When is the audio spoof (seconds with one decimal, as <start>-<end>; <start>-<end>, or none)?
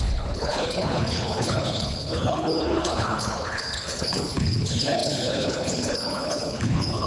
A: 0.0-7.1